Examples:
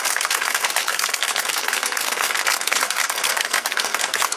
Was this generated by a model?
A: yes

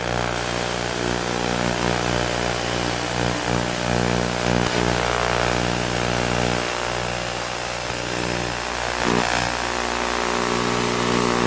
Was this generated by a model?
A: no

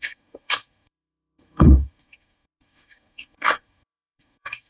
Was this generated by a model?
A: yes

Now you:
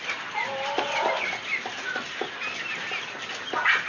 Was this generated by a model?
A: no